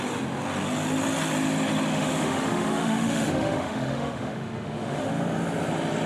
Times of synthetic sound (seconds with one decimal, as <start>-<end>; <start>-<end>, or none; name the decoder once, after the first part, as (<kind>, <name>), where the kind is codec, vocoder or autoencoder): 1.9-5.1 (autoencoder, DAC-VAE)